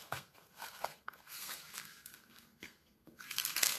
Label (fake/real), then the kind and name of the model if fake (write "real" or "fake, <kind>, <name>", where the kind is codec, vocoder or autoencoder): fake, codec, SNAC